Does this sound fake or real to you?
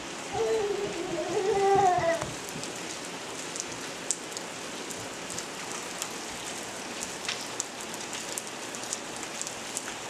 real